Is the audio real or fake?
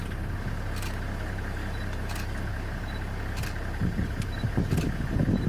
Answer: real